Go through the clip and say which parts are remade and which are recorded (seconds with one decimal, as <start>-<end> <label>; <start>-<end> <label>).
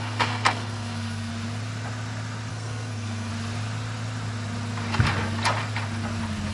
0.0-1.3 remade; 1.3-2.5 recorded; 2.5-3.3 remade; 3.3-6.5 recorded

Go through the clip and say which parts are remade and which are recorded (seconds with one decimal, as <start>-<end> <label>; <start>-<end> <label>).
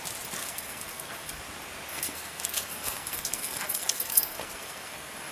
0.0-0.4 recorded; 0.4-1.4 remade; 1.4-1.9 recorded; 1.9-5.3 remade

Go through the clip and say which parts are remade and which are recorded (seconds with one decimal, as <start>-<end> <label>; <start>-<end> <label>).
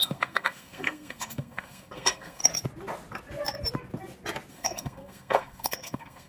0.0-2.4 remade; 2.4-4.5 recorded; 4.5-6.3 remade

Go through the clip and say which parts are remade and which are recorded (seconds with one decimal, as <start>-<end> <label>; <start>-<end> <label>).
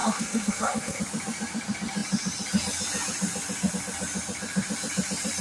0.0-1.0 remade; 1.0-5.4 recorded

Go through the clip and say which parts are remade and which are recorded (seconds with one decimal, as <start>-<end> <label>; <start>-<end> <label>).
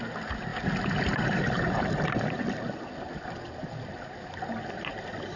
0.0-5.4 recorded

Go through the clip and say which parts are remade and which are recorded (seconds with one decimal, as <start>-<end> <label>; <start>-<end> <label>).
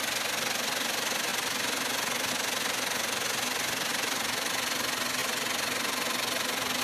0.0-6.8 recorded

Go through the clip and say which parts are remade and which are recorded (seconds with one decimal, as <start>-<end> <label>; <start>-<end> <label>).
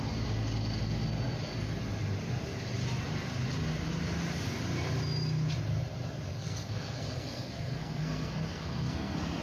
0.0-6.3 recorded; 6.3-9.4 remade